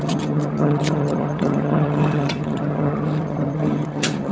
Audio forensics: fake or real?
fake